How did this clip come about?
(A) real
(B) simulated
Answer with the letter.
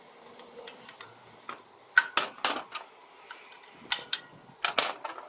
A